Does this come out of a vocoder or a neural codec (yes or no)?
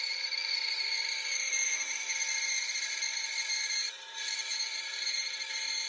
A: yes